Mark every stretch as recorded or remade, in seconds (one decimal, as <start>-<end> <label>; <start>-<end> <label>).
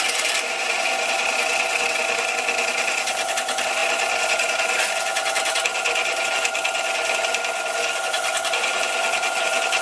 0.0-1.4 recorded; 1.4-2.0 remade; 2.0-9.8 recorded